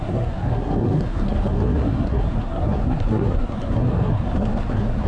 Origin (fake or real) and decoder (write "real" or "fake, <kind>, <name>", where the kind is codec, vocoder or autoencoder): fake, codec, SNAC